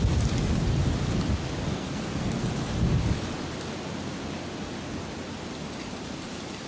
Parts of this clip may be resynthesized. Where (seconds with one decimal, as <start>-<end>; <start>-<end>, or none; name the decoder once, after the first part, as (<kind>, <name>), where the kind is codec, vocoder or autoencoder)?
1.7-2.5 (codec, SNAC)

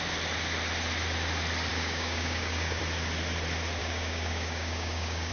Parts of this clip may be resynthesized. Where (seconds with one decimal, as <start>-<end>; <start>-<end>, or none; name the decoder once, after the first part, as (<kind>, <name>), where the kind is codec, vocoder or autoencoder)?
1.7-2.8 (codec, DAC); 3.8-5.3

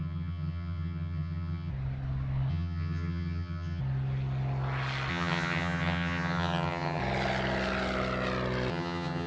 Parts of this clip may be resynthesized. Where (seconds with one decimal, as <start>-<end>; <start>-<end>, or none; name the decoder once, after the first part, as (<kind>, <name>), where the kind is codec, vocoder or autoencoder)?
0.0-1.7 (vocoder, HiFi-GAN); 2.5-3.8; 5.1-7.0; 8.7-9.3